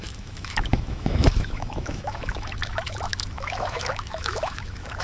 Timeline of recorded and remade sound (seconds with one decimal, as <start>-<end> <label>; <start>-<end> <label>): 0.0-5.0 remade